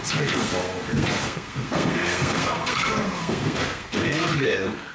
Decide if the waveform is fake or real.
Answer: fake